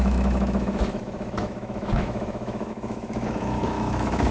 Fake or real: fake